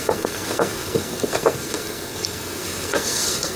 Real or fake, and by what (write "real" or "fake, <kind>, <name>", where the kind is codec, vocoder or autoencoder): fake, codec, SNAC